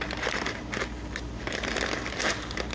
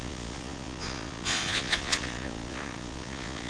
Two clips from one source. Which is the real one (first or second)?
first